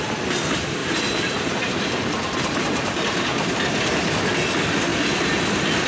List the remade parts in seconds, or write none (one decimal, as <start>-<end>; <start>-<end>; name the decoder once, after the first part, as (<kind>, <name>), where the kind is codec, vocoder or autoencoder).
0.8-3.5 (vocoder, BigVGAN v2)

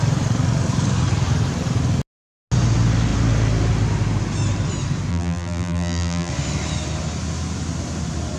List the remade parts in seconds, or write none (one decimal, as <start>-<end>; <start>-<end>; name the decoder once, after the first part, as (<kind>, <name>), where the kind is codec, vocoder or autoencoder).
5.1-6.3 (vocoder, BigVGAN v2)

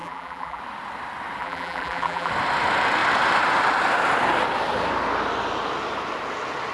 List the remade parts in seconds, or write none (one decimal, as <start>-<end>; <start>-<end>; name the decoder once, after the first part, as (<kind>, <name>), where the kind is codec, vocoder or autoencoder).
0.0-0.6 (vocoder, BigVGAN v2); 1.4-2.3

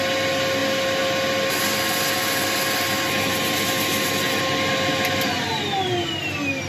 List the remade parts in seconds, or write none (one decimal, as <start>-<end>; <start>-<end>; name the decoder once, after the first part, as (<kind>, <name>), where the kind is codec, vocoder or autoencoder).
none